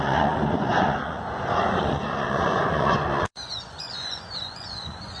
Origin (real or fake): fake